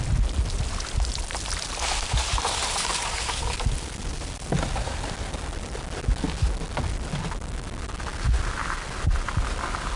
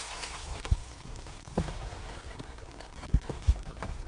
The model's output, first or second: second